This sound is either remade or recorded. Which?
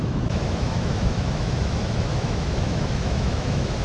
remade